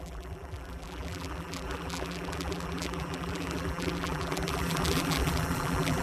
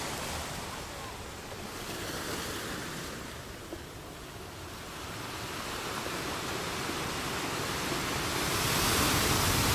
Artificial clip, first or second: first